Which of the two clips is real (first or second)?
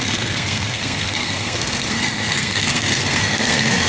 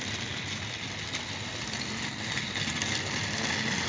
second